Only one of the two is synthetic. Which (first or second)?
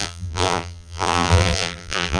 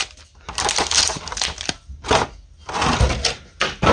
first